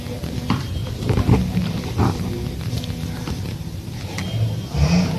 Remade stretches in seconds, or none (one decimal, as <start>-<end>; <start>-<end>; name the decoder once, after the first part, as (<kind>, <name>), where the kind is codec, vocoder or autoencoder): 0.8-3.9 (vocoder, BigVGAN v2)